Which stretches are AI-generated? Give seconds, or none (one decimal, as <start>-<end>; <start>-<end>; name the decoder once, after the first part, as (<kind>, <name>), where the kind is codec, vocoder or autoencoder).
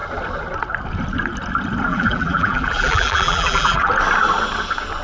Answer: 1.9-3.9 (vocoder, BigVGAN v2)